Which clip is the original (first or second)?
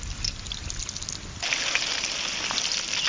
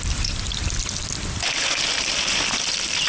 first